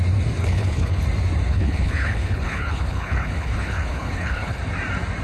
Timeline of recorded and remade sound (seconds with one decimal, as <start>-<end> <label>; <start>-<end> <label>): 0.0-0.4 recorded; 0.4-1.0 remade; 1.0-1.5 recorded; 1.5-4.6 remade; 4.6-5.2 recorded